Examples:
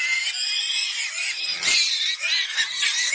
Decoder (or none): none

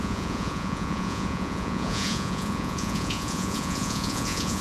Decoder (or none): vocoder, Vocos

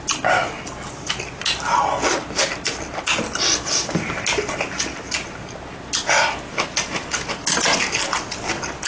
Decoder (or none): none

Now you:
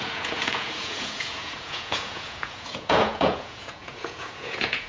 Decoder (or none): vocoder, Vocos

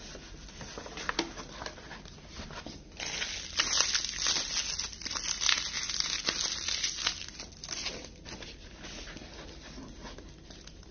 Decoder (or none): none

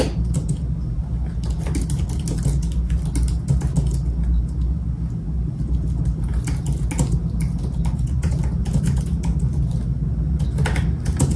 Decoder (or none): none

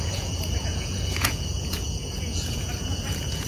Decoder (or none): vocoder, Vocos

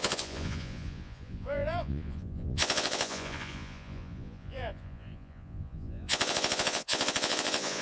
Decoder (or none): vocoder, Vocos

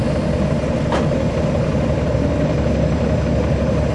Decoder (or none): none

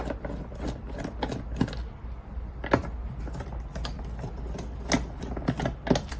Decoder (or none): none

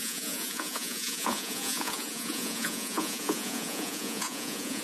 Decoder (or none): vocoder, Vocos